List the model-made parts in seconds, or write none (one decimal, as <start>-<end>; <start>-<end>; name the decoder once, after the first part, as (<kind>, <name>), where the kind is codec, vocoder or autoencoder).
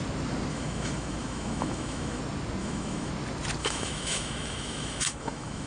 0.5-2.2 (autoencoder, DAC-VAE); 2.6-3.1; 3.6-5.7